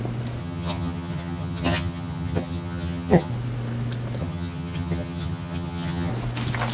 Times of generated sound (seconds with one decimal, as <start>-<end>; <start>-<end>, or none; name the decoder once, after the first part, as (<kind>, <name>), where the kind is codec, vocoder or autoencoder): 0.4-3.3 (vocoder, HiFi-GAN); 4.2-6.1